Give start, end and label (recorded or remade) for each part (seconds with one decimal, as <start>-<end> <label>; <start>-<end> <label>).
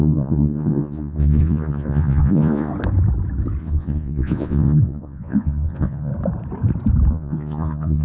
0.0-2.7 remade; 2.7-3.6 recorded; 3.6-6.1 remade; 6.1-7.1 recorded; 7.1-8.0 remade